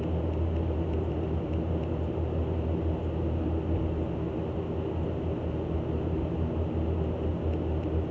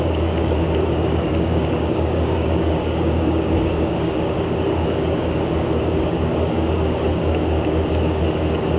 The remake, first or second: second